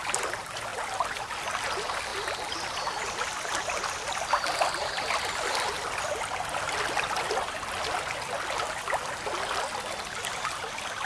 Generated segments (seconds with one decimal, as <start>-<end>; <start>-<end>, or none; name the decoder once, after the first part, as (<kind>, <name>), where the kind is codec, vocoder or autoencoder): none